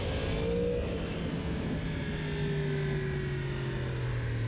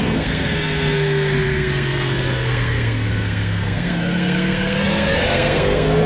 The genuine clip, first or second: first